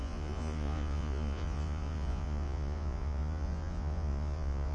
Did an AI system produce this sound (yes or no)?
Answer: yes